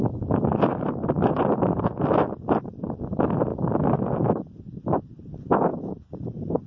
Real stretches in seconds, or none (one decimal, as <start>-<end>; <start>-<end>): 0.0-0.7; 2.1-5.7